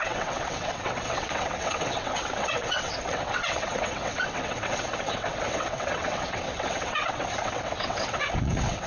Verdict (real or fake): fake